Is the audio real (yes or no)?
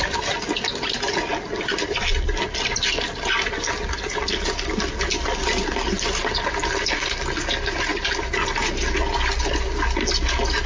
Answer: yes